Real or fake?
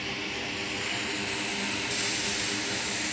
real